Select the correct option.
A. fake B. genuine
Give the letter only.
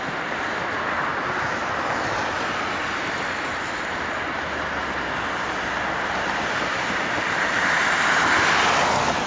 B